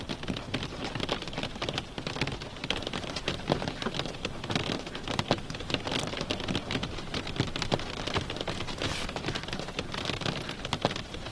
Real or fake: real